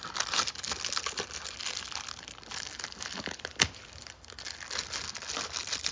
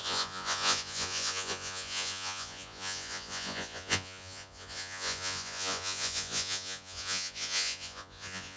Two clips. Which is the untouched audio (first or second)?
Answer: first